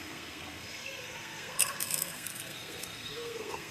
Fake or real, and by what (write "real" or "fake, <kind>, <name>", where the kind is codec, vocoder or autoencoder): fake, codec, SNAC